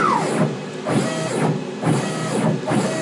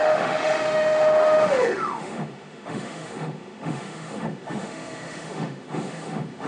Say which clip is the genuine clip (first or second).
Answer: first